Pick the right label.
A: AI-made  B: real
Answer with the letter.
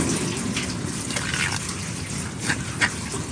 B